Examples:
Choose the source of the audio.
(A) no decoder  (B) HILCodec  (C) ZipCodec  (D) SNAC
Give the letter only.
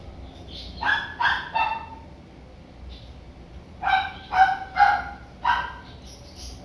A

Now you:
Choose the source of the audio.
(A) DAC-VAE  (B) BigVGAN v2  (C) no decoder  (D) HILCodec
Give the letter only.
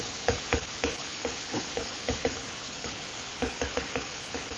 D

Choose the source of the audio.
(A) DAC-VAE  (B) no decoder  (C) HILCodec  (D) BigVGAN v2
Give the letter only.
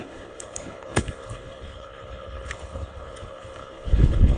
C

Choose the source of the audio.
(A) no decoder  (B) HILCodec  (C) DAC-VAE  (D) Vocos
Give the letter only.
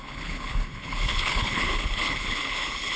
B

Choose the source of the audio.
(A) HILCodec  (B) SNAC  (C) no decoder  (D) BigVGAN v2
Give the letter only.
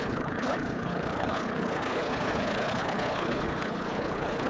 A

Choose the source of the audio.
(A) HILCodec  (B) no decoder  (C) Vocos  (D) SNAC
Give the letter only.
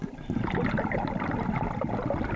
B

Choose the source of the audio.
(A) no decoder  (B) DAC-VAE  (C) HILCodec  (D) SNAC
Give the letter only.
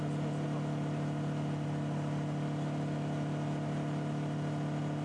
A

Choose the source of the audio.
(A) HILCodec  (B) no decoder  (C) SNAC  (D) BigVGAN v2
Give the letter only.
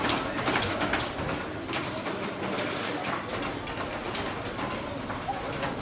B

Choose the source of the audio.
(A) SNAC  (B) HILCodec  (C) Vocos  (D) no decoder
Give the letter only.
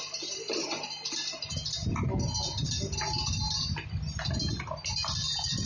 D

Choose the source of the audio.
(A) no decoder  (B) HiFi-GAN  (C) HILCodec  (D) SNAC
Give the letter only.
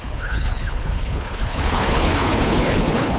C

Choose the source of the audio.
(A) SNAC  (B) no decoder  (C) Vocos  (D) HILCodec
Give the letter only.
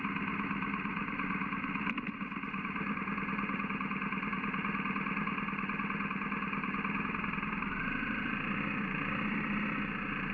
B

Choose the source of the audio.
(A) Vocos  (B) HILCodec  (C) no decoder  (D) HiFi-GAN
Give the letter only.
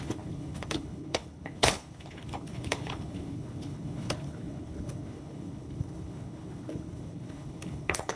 B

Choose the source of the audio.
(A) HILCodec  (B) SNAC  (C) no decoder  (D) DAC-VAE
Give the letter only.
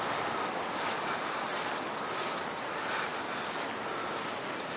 C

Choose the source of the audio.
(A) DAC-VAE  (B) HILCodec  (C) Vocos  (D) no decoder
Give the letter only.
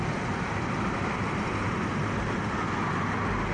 D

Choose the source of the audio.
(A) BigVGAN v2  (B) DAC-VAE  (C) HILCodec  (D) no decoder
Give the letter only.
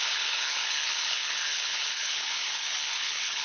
C